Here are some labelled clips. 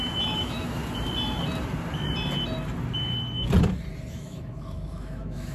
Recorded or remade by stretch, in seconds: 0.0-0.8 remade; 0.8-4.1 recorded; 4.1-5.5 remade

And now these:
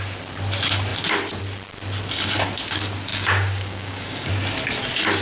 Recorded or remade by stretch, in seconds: 0.0-3.1 recorded; 3.1-4.3 remade; 4.3-5.2 recorded

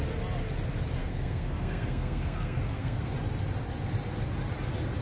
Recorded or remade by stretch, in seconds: 0.0-1.0 recorded; 1.0-3.1 remade; 3.1-5.0 recorded